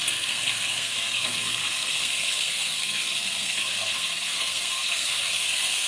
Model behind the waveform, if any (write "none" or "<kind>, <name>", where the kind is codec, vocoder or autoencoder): codec, SNAC